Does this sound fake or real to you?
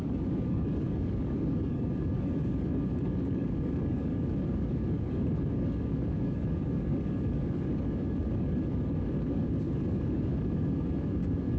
fake